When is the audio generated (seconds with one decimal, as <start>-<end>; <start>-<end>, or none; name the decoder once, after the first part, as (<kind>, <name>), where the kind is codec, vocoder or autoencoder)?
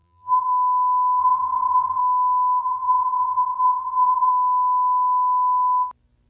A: 0.0-0.5 (vocoder, BigVGAN v2); 1.2-2.0; 2.6-4.3